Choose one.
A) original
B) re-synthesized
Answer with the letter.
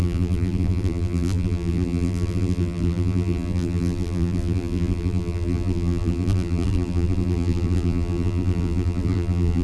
B